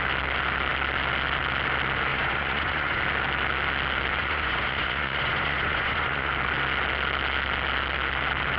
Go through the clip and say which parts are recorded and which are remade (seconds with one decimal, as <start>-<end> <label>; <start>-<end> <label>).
0.0-2.1 recorded; 2.1-3.0 remade; 3.0-4.2 recorded; 4.2-6.3 remade; 6.3-8.6 recorded